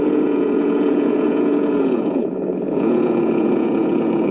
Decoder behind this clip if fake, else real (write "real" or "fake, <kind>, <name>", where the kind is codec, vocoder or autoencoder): fake, vocoder, Vocos